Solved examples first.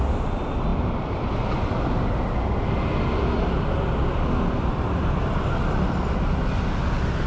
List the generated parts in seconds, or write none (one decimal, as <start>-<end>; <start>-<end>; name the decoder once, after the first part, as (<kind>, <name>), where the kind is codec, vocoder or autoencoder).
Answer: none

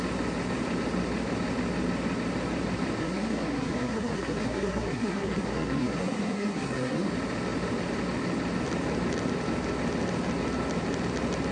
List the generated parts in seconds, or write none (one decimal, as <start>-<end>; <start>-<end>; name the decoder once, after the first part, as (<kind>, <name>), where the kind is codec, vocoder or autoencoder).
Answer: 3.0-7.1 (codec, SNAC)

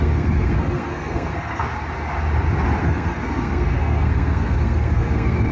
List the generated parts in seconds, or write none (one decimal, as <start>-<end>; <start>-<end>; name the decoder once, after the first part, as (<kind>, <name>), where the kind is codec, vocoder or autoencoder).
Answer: 0.0-1.6 (codec, SNAC); 2.8-5.5